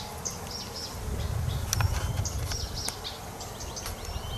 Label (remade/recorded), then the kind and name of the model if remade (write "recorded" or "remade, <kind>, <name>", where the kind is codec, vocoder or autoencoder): recorded